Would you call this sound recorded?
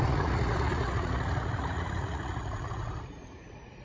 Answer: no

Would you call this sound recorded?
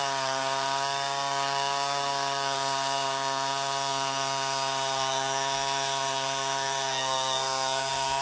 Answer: no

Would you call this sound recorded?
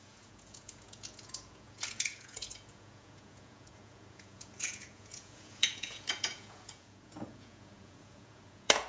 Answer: no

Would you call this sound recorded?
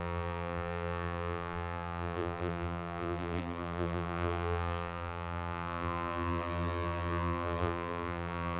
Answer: no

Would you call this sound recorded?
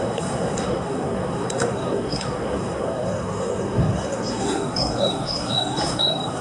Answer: no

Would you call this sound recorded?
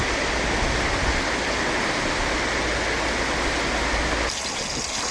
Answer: yes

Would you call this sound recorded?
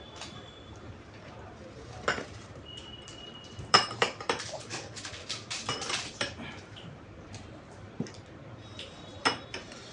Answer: no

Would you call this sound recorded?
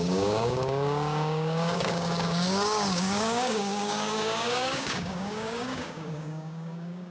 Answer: no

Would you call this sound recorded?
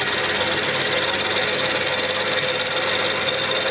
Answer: yes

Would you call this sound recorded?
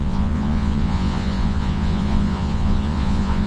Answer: no